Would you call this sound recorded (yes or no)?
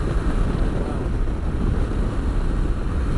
yes